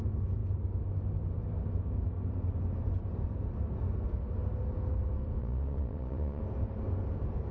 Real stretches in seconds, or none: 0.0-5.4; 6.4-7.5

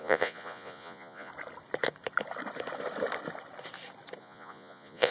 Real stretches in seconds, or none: 1.3-4.2